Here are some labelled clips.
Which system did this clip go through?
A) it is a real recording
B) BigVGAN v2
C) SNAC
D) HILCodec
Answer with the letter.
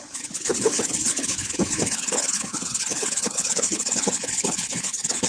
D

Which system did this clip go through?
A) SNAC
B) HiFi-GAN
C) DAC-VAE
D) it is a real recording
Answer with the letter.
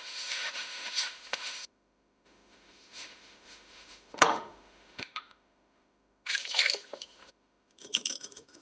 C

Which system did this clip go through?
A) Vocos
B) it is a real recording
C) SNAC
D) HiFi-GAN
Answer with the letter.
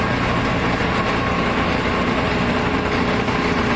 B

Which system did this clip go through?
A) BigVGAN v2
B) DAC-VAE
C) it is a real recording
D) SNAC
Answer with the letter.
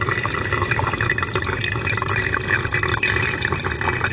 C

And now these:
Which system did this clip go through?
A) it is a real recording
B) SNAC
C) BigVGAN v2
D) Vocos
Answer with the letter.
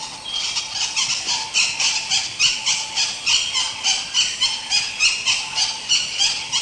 A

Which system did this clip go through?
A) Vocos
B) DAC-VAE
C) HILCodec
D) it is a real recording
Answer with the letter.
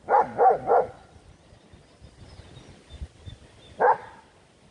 D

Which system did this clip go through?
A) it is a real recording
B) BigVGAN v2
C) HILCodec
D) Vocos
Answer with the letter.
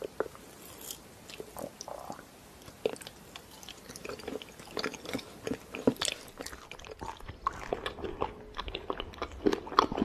A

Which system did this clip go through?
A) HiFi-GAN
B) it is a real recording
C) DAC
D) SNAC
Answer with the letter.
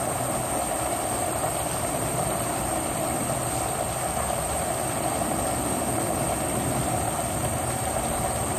B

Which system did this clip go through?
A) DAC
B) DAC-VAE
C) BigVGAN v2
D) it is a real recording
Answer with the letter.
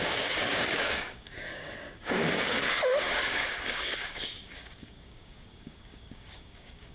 A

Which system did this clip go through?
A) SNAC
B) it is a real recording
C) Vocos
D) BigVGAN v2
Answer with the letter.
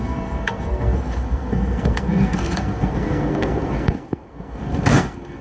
A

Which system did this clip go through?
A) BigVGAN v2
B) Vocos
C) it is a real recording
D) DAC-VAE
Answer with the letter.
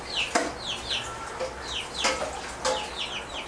C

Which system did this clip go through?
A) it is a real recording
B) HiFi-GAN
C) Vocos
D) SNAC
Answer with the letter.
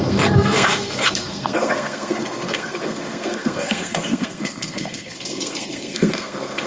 D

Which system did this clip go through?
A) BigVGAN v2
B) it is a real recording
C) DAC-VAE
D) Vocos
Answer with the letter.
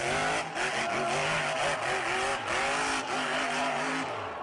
B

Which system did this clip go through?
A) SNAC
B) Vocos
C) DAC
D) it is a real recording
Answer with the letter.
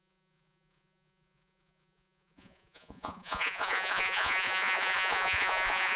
B